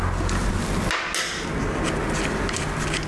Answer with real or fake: real